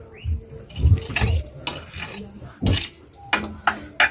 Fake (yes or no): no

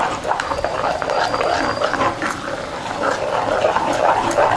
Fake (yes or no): no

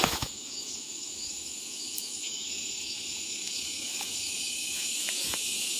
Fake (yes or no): yes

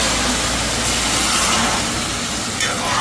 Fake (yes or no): no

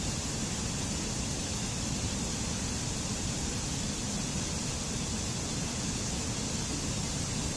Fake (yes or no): no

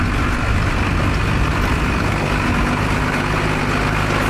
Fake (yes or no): no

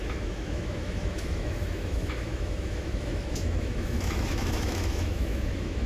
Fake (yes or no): yes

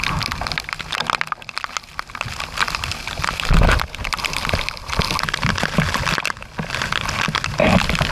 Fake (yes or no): no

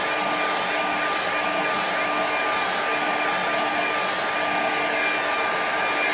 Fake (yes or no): no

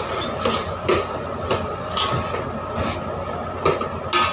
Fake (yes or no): no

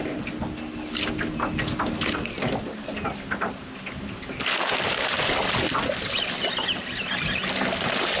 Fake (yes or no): no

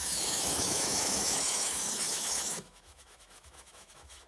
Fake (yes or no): yes